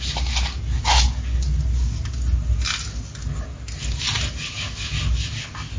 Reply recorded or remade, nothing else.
recorded